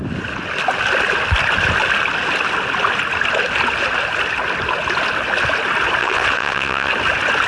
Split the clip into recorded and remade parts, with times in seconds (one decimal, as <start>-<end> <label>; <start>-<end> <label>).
0.0-6.0 recorded; 6.0-6.9 remade; 6.9-7.5 recorded